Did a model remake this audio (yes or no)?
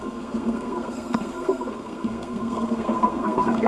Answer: yes